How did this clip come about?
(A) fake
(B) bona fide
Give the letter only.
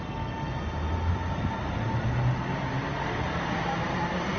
B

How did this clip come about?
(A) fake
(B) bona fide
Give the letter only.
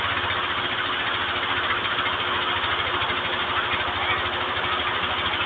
B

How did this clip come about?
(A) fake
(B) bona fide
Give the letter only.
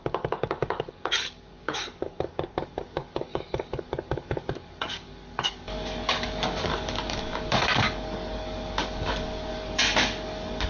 A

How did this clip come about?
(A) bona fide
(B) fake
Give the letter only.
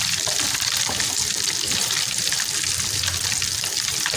B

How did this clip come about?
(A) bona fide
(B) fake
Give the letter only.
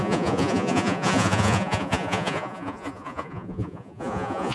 B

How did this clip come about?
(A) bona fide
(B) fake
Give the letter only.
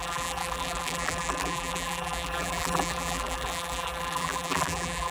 B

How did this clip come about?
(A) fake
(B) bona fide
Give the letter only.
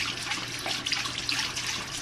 B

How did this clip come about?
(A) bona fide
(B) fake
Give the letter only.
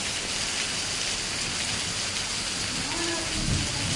A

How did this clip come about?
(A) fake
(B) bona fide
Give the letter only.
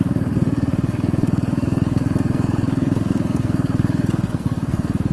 A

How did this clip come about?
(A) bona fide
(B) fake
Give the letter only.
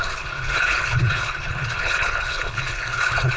B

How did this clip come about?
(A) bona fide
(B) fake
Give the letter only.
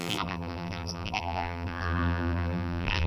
B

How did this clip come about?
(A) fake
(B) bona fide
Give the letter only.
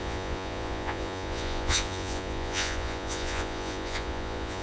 A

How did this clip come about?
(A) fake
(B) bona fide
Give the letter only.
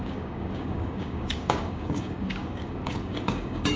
A